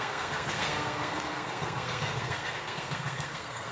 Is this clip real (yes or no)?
no